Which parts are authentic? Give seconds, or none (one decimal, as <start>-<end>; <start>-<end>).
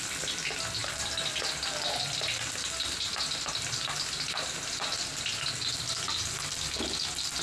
0.0-7.4